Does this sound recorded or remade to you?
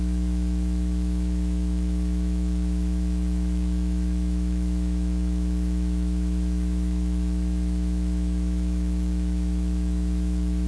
remade